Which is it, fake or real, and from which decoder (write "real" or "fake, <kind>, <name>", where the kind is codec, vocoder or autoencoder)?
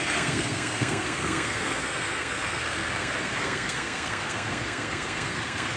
fake, codec, SNAC